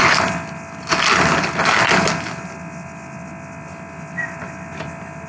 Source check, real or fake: real